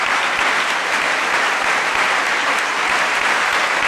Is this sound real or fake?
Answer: real